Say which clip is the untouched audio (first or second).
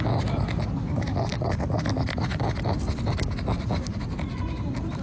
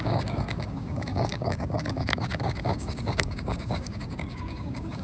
first